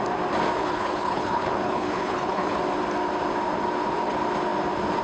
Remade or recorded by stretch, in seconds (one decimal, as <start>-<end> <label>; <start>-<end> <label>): 0.0-0.6 recorded; 0.6-2.6 remade; 2.6-5.0 recorded